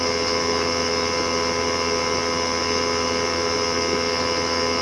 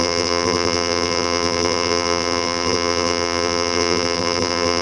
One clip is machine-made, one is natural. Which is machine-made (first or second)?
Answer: second